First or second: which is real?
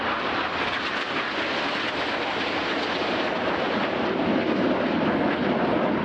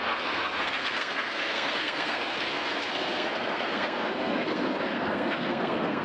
first